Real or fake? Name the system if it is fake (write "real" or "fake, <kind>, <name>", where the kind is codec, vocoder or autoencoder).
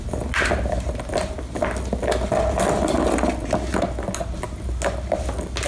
real